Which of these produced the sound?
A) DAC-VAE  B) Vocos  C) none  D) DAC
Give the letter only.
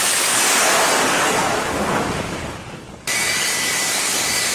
D